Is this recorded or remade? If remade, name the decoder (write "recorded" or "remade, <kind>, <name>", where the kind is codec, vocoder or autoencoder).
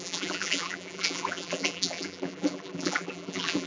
remade, vocoder, BigVGAN v2